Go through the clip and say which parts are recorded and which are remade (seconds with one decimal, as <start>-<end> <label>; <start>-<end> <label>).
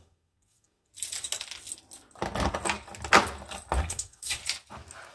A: 0.0-0.9 remade; 0.9-3.8 recorded; 3.8-4.4 remade; 4.4-5.1 recorded